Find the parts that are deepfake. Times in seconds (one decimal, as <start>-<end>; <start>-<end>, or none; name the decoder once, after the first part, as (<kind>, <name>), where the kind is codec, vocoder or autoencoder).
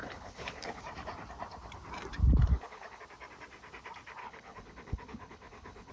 0.0-0.8 (codec, HILCodec); 2.5-3.0; 4.2-5.9